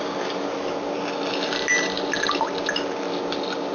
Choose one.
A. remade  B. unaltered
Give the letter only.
B